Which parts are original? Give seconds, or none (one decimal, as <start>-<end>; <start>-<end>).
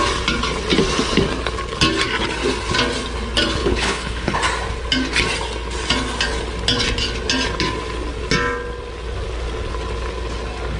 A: 0.0-3.6; 4.4-10.8